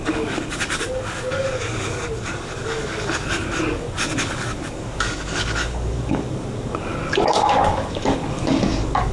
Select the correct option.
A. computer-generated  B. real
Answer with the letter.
A